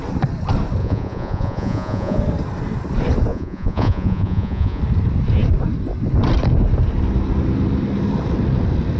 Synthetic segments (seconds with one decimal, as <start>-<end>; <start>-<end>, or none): 0.8-2.2; 3.3-4.8